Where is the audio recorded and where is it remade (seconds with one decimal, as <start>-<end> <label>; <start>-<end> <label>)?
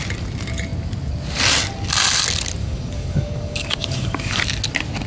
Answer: 0.0-2.6 recorded; 2.6-4.4 remade; 4.4-5.1 recorded